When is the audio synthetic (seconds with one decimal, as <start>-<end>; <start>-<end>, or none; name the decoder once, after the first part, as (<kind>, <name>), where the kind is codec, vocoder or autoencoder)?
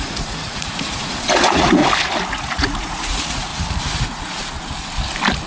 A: 0.0-1.8 (vocoder, Vocos); 2.3-3.5; 4.0-4.4